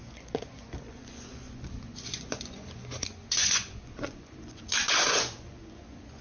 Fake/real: fake